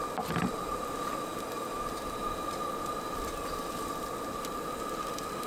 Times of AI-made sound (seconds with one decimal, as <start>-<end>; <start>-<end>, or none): none